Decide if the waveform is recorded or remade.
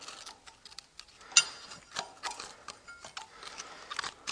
recorded